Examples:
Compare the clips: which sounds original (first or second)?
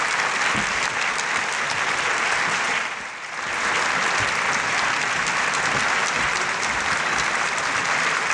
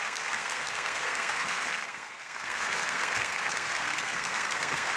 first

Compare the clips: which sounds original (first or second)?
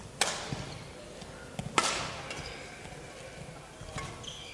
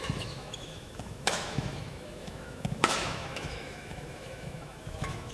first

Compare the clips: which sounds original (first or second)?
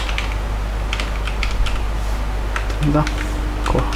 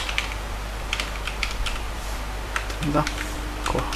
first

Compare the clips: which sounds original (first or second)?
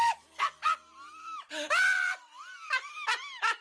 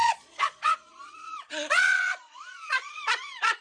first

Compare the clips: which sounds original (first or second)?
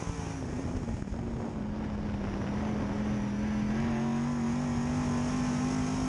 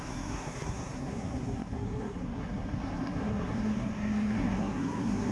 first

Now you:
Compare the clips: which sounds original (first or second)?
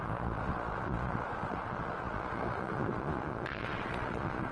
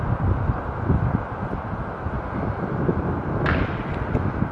second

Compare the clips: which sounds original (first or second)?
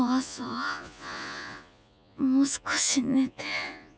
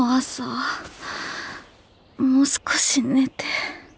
second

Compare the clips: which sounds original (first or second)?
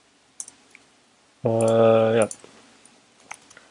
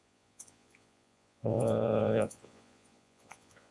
first